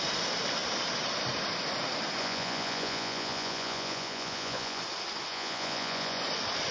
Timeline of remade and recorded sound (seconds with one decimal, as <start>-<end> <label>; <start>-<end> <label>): 0.0-2.2 recorded; 2.2-4.8 remade; 4.8-5.3 recorded; 5.3-6.2 remade; 6.2-6.7 recorded